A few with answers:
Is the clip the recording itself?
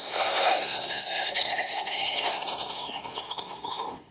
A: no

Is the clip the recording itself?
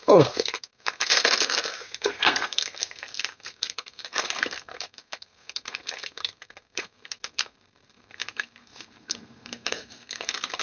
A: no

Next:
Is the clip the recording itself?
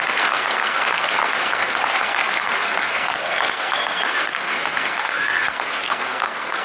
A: no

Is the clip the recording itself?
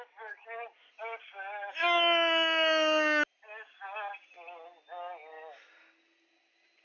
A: yes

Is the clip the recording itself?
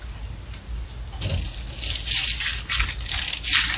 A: yes